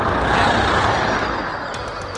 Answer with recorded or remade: recorded